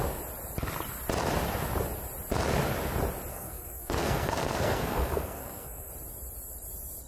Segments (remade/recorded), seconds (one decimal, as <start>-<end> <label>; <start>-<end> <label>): 0.0-3.3 recorded; 3.3-5.9 remade; 5.9-7.1 recorded